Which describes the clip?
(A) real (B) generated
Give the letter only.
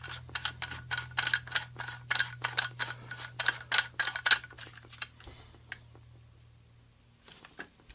A